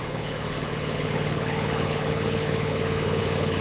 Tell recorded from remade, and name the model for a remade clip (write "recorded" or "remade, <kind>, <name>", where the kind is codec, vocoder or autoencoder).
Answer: remade, codec, HILCodec